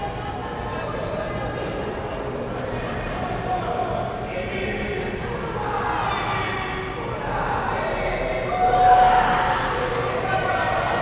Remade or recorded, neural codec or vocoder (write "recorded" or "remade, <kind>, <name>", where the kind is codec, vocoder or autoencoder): recorded